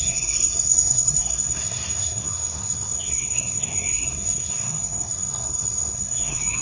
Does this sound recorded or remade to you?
remade